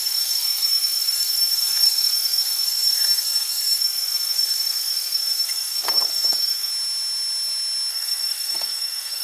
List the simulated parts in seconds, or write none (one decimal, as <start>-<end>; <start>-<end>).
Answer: 0.0-6.7; 7.9-9.2